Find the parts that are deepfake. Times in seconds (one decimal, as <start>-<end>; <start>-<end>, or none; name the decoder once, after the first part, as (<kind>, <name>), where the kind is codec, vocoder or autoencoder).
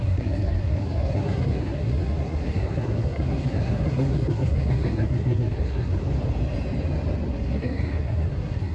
0.0-6.0 (codec, SNAC); 7.3-8.7